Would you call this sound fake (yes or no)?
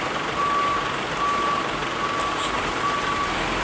no